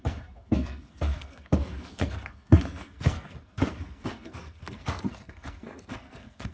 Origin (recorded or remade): remade